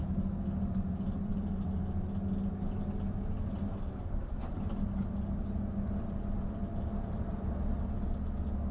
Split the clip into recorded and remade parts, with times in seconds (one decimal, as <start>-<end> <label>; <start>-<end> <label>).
0.0-8.7 recorded

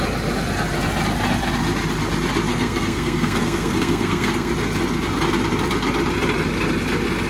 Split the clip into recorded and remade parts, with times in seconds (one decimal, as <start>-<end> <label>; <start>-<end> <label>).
0.0-2.5 recorded; 2.5-4.5 remade; 4.5-7.3 recorded

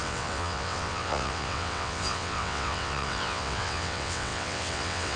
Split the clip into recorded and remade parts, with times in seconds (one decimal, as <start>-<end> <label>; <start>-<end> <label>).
0.0-5.2 remade

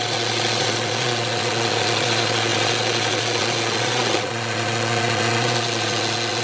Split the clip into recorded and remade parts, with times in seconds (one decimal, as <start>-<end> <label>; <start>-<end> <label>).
0.0-6.4 remade